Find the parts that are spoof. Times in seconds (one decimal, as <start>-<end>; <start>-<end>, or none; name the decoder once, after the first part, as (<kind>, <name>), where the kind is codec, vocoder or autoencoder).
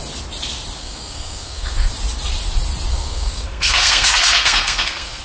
0.8-1.9 (codec, SNAC); 2.9-5.2